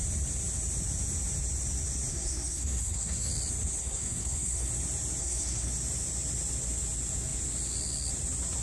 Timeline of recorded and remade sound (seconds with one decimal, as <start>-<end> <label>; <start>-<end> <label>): 0.0-2.1 recorded; 2.1-3.3 remade; 3.3-3.8 recorded; 3.8-4.7 remade; 4.7-5.2 recorded; 5.2-5.7 remade; 5.7-8.6 recorded